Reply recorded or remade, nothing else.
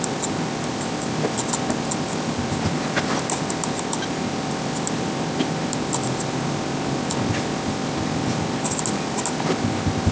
recorded